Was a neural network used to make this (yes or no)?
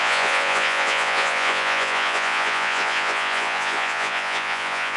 yes